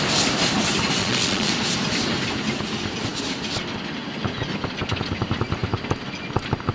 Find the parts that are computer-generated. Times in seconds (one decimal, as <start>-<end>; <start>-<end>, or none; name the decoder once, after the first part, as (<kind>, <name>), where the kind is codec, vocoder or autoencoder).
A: 1.0-1.5 (vocoder, Vocos)